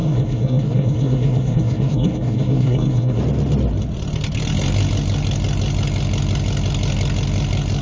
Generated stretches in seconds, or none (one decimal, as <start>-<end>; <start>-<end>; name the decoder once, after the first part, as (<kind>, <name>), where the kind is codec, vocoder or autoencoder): 0.0-3.2 (codec, SNAC)